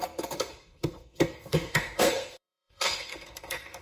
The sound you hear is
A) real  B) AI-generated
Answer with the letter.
B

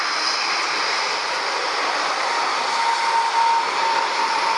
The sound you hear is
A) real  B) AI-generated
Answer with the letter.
A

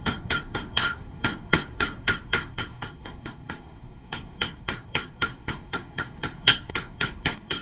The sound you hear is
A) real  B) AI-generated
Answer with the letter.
B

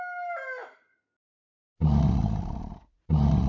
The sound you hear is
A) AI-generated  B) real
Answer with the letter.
B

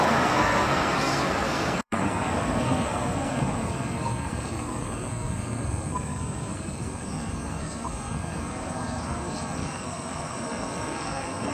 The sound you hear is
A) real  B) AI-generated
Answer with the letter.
B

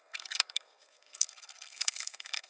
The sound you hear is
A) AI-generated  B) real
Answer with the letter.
A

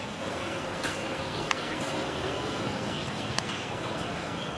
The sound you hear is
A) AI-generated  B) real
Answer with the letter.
A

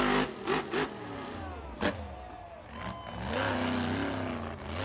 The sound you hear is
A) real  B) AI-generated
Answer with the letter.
A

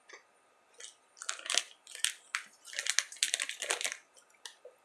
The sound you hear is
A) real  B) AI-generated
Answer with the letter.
A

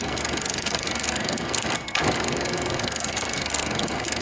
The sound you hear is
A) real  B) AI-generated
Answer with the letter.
B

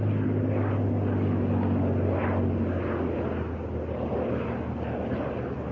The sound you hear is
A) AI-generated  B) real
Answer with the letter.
B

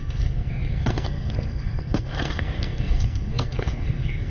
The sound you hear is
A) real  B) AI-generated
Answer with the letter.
B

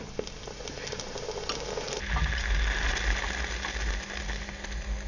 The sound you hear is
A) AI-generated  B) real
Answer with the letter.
B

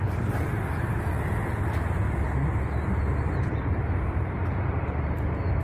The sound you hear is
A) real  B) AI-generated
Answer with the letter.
A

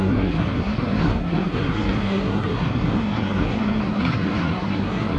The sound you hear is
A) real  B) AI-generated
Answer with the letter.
B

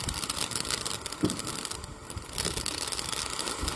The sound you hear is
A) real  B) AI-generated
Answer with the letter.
A